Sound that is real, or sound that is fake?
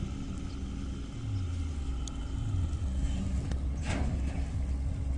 real